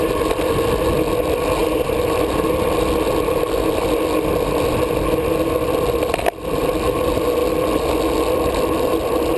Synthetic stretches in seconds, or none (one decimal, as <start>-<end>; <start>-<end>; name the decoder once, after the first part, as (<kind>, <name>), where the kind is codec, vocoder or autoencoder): none